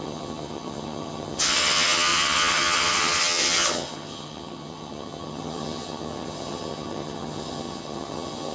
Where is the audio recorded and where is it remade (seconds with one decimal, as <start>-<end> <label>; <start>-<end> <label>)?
0.0-8.5 remade